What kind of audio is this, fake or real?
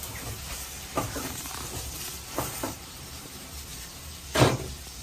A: fake